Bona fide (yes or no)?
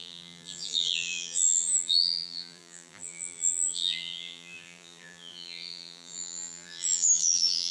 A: no